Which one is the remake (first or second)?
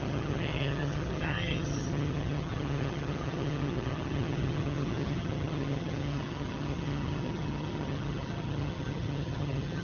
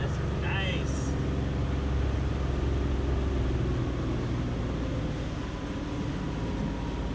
first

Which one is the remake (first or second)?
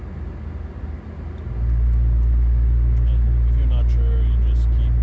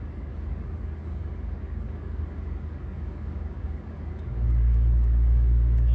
second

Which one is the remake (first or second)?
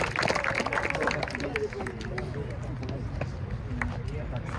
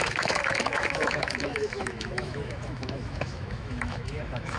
second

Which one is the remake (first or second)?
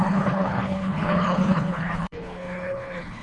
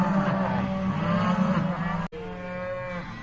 first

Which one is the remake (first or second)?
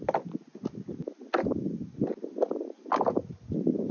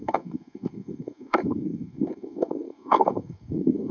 second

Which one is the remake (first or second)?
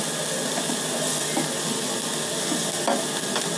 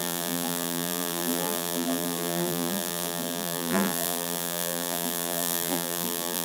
second